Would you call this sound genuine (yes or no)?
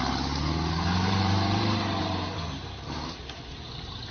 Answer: no